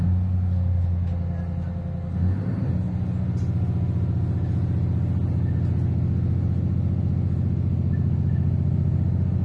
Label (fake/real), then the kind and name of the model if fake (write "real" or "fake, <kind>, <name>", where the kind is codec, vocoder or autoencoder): real